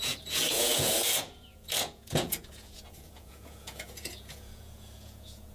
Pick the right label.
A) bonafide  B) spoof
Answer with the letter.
B